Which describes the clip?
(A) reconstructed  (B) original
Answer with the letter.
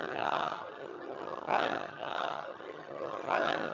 A